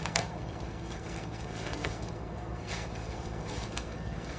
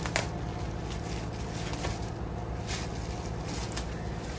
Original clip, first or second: second